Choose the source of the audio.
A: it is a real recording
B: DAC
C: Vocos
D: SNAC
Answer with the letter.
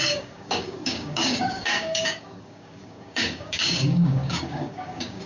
B